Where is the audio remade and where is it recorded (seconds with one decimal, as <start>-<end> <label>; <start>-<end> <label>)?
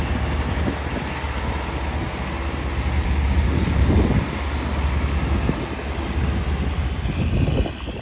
0.0-3.0 recorded; 3.0-4.4 remade; 4.4-8.0 recorded